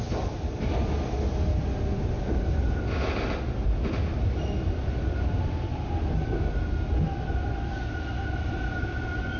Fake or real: real